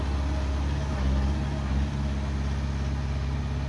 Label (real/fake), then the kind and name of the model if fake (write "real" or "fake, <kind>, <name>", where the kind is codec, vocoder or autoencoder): real